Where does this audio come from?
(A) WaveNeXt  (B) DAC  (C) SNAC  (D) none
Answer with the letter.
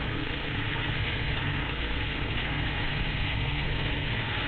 C